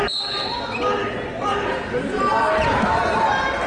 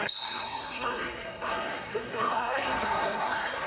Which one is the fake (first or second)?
second